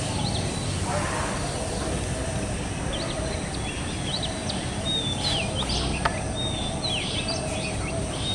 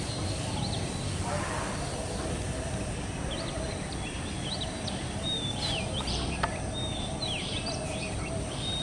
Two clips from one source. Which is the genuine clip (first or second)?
first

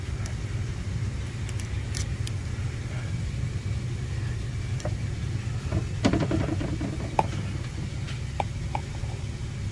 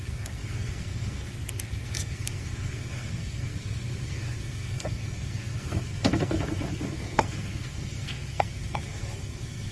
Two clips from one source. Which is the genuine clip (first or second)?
first